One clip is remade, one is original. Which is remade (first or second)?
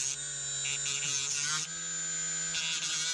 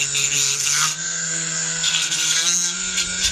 second